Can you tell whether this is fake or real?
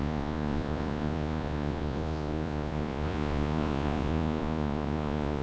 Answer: fake